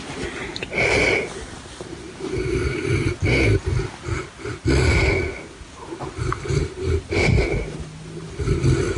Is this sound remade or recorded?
recorded